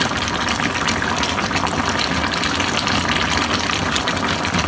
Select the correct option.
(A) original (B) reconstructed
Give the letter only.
A